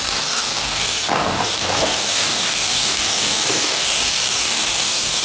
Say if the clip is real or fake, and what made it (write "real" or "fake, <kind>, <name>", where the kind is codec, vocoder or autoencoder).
fake, codec, DAC